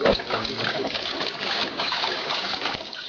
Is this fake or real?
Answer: fake